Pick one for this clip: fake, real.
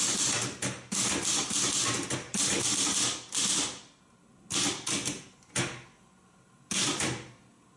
real